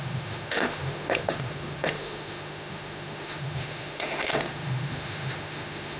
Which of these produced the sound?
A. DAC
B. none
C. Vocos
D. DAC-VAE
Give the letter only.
D